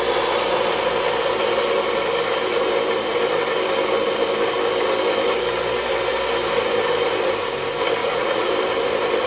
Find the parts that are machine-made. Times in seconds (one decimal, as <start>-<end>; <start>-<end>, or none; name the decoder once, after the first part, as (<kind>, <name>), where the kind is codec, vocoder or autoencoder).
8.0-8.5 (vocoder, Vocos)